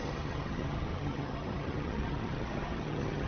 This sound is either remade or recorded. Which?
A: remade